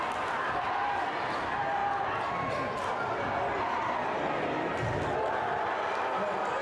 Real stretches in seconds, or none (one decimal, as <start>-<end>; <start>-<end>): 0.0-6.6